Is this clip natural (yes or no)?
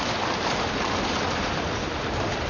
yes